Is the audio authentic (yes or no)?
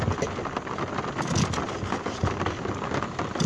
yes